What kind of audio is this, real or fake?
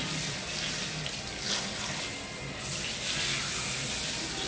real